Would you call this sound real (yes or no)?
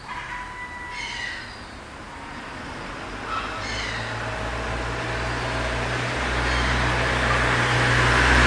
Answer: yes